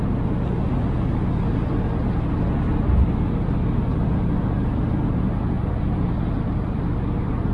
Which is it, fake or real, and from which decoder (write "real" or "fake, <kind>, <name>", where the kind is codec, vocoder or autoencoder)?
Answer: real